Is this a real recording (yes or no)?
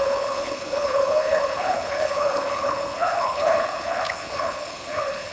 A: no